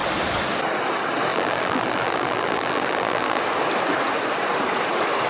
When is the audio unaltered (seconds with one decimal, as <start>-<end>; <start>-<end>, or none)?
0.0-1.3; 3.4-5.3